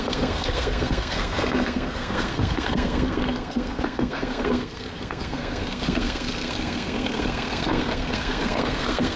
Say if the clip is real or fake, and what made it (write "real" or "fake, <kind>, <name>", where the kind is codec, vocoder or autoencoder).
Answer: fake, codec, SNAC